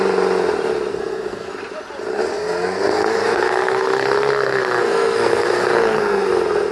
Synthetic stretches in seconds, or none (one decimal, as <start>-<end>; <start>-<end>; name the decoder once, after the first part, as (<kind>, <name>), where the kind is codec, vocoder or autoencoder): 0.9-1.5 (codec, SNAC); 2.3-6.3